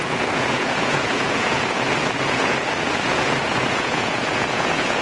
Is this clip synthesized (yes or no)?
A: yes